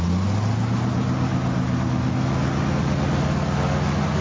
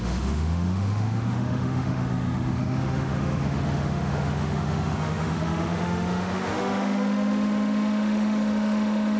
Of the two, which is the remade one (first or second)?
second